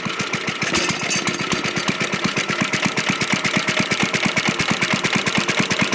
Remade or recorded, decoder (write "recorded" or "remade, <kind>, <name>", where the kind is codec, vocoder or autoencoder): recorded